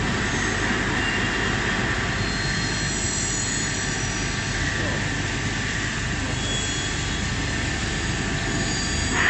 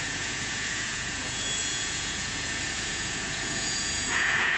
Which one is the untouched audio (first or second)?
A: first